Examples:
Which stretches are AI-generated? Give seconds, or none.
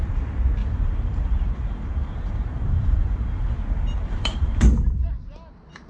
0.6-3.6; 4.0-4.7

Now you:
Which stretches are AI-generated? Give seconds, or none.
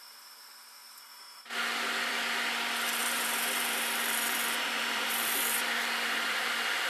3.0-6.9